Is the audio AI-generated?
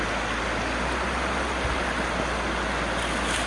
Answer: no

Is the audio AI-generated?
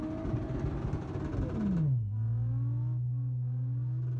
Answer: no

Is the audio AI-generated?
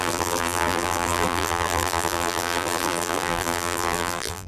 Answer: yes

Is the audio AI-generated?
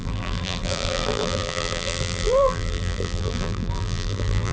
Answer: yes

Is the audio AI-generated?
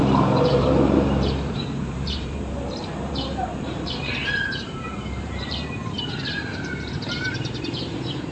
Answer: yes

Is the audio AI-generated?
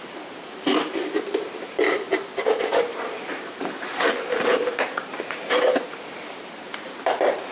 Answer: yes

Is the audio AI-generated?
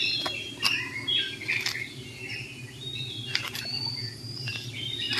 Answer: no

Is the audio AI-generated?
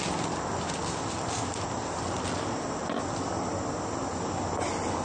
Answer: no